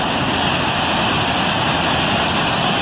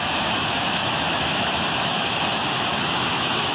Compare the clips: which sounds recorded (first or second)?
first